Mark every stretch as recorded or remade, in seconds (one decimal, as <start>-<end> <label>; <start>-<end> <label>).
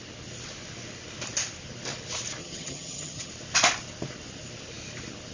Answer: 0.0-2.4 recorded; 2.4-3.3 remade; 3.3-5.3 recorded